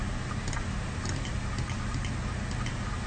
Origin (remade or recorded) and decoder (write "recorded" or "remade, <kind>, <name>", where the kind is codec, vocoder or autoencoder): recorded